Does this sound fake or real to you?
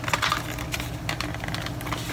real